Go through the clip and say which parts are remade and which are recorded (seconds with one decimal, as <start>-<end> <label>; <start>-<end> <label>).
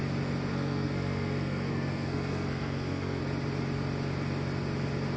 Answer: 0.0-0.5 recorded; 0.5-3.2 remade; 3.2-5.2 recorded